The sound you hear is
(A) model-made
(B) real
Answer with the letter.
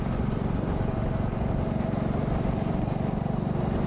B